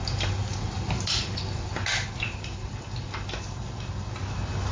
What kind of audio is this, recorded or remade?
recorded